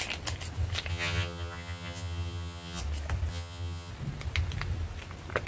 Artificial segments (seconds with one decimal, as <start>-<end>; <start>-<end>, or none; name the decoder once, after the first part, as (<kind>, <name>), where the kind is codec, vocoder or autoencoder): 0.9-2.8 (vocoder, HiFi-GAN); 3.3-3.9